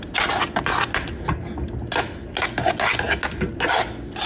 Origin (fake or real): real